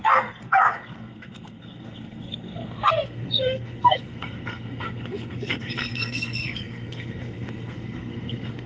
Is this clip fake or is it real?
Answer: fake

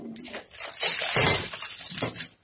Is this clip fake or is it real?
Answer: real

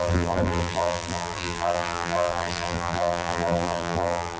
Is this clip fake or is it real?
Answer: fake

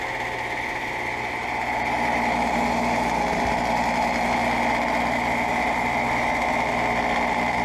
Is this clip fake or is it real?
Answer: real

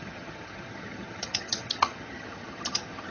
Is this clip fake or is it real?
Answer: fake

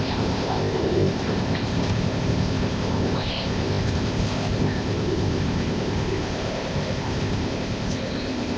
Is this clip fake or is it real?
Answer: fake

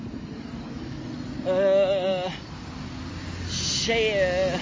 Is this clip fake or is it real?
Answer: real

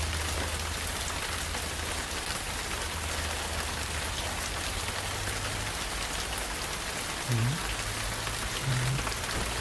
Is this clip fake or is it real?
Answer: real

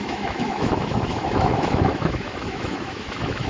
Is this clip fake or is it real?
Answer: fake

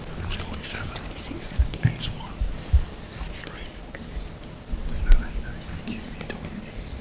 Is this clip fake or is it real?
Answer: real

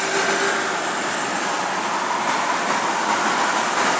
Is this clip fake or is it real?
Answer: real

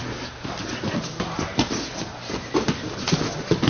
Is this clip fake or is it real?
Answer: real